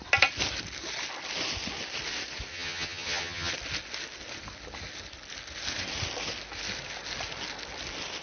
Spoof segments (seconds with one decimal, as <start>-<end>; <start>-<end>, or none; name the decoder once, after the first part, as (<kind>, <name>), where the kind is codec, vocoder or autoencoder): 2.5-3.5 (vocoder, HiFi-GAN)